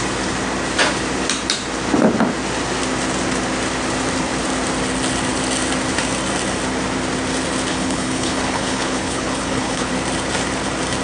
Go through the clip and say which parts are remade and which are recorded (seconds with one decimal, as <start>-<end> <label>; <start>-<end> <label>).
0.0-7.7 recorded; 7.7-9.9 remade; 9.9-11.0 recorded